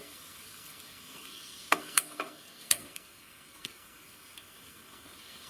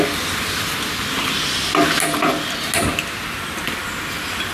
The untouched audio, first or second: second